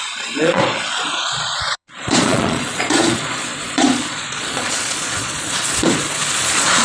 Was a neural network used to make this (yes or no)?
yes